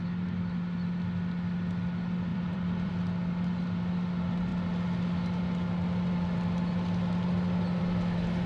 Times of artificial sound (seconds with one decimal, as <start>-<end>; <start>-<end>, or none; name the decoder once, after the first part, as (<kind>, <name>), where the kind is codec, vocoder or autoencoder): 2.3-2.9 (vocoder, BigVGAN v2)